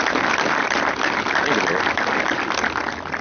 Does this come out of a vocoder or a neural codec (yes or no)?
no